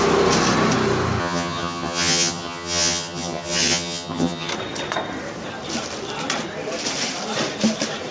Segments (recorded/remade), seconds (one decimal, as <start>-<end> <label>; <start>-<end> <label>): 0.0-1.2 recorded; 1.2-4.5 remade; 4.5-8.1 recorded